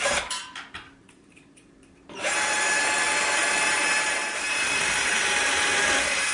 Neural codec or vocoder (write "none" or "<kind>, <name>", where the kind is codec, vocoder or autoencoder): vocoder, BigVGAN v2